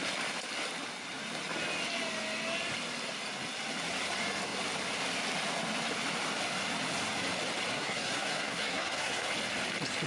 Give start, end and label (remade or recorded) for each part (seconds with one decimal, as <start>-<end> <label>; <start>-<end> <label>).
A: 0.0-7.7 recorded; 7.7-9.3 remade; 9.3-10.1 recorded